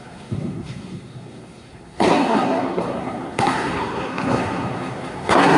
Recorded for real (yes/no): no